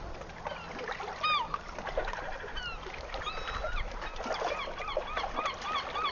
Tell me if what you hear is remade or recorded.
recorded